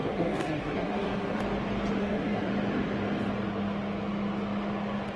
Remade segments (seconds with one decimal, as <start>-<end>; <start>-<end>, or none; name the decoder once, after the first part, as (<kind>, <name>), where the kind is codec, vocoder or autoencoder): 0.0-1.4 (codec, SNAC); 2.0-2.5